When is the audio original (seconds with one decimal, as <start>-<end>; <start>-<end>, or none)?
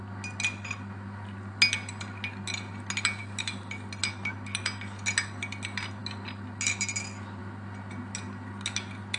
0.0-9.2